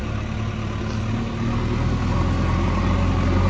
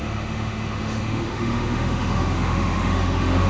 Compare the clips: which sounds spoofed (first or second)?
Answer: second